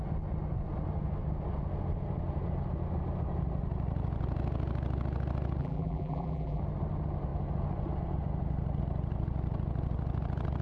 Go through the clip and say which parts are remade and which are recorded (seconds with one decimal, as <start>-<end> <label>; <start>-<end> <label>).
0.0-5.6 recorded; 5.6-6.6 remade; 6.6-10.6 recorded